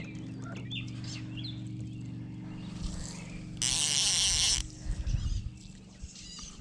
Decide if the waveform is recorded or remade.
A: recorded